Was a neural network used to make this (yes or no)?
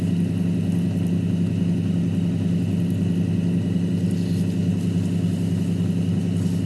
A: no